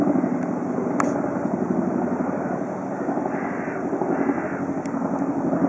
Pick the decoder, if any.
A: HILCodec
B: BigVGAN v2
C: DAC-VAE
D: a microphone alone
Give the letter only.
D